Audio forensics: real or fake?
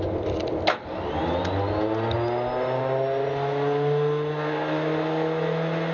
real